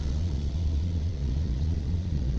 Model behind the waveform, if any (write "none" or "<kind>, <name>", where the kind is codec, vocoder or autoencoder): vocoder, Vocos